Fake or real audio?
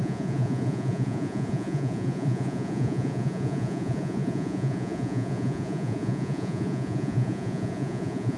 fake